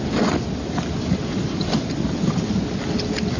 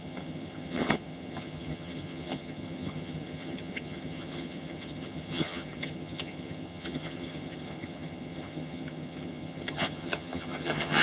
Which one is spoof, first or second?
second